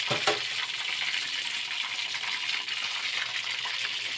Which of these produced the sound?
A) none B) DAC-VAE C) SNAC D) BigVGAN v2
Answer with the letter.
A